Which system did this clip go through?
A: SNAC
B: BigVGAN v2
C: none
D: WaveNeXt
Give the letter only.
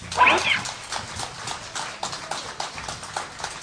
C